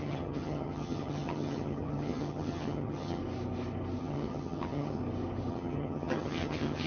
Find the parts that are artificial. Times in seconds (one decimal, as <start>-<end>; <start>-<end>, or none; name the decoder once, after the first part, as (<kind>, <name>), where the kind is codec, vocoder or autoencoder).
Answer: 0.0-3.2 (vocoder, HiFi-GAN); 4.0-5.0; 5.5-6.9